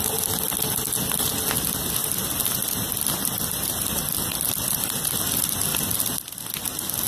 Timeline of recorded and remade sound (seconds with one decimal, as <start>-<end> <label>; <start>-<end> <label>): 0.0-2.0 recorded; 2.0-4.8 remade; 4.8-7.1 recorded